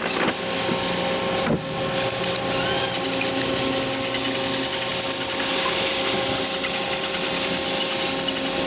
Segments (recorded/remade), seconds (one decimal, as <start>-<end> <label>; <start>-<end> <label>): 0.0-8.7 recorded